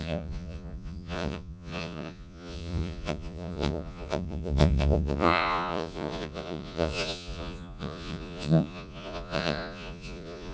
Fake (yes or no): yes